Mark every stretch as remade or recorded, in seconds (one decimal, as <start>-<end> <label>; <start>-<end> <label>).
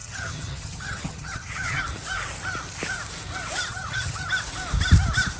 0.0-1.8 remade; 1.8-3.7 recorded; 3.7-4.3 remade; 4.3-5.4 recorded